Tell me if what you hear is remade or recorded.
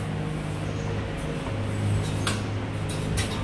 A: recorded